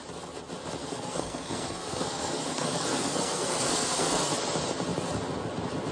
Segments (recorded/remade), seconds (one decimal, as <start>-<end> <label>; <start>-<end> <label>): 0.0-0.8 recorded; 0.8-4.3 remade; 4.3-5.9 recorded

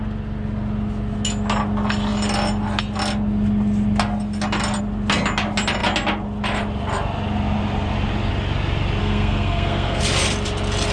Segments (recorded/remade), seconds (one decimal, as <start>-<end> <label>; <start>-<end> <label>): 0.0-9.0 recorded; 9.0-10.0 remade; 10.0-10.9 recorded

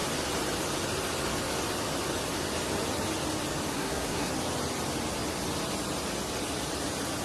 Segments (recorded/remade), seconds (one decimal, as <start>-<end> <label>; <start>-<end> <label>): 0.0-3.7 recorded; 3.7-4.3 remade; 4.3-7.2 recorded

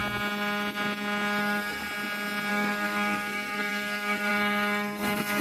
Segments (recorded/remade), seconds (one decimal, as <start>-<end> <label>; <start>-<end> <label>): 0.0-1.4 recorded; 1.4-1.8 remade; 1.8-2.5 recorded; 2.5-5.4 remade

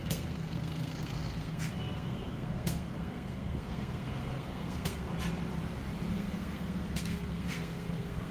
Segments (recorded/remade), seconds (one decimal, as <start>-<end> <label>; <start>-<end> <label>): 0.0-5.1 remade; 5.1-6.1 recorded; 6.1-8.3 remade

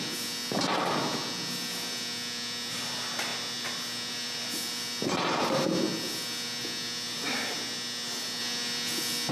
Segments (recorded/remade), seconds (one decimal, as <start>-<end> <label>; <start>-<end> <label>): 0.0-9.3 recorded

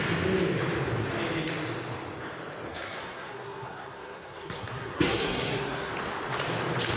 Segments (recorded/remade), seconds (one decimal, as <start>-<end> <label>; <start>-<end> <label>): 0.0-2.7 recorded; 2.7-5.9 remade; 5.9-7.0 recorded